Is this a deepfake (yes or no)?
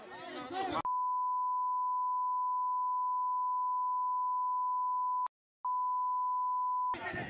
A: no